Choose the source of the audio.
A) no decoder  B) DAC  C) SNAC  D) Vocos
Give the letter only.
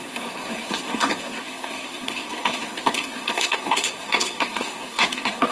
C